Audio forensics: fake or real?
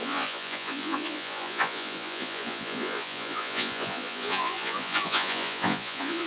fake